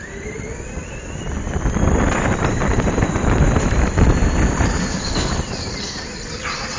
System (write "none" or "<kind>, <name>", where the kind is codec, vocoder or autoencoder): vocoder, BigVGAN v2